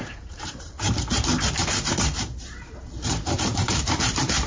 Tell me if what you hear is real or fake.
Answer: fake